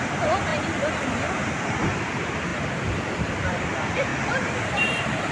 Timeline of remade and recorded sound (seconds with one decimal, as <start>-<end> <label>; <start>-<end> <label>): 0.0-0.5 remade; 0.5-1.6 recorded; 1.6-2.5 remade; 2.5-3.6 recorded; 3.6-4.1 remade; 4.1-4.6 recorded; 4.6-5.3 remade